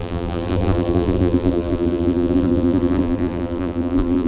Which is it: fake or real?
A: fake